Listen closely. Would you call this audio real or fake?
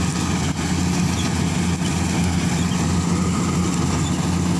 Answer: real